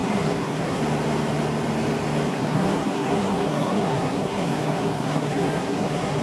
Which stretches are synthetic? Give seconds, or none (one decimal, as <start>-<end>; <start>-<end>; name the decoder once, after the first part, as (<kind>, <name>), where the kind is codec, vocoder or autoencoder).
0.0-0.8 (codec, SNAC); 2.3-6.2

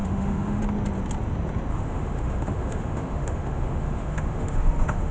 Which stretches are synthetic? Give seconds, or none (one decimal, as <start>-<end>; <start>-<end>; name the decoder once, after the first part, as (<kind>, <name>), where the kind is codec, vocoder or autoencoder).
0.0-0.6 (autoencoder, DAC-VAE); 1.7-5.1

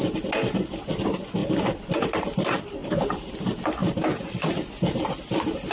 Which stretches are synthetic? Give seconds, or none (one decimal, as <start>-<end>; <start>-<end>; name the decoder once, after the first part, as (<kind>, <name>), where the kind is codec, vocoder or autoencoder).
1.4-2.2 (vocoder, BigVGAN v2); 2.8-3.3; 3.8-5.7

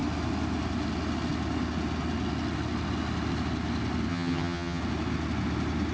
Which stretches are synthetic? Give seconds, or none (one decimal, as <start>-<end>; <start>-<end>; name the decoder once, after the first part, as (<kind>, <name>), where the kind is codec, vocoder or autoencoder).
4.1-4.8 (vocoder, HiFi-GAN)

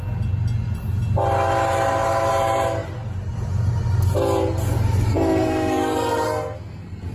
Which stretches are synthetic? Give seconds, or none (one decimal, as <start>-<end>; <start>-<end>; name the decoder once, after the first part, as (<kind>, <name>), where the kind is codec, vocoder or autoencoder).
5.1-7.1 (codec, SNAC)